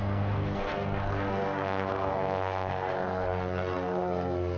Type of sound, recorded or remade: remade